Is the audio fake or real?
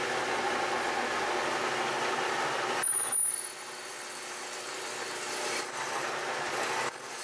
real